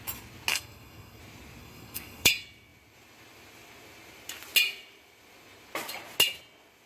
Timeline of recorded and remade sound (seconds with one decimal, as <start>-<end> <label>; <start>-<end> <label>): 0.0-0.5 recorded; 0.5-1.2 remade; 1.2-1.6 recorded; 1.6-2.3 remade; 2.3-6.9 recorded